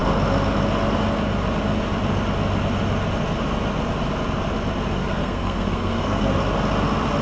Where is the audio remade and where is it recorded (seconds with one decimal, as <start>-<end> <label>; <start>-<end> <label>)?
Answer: 0.0-5.0 recorded; 5.0-6.3 remade; 6.3-7.2 recorded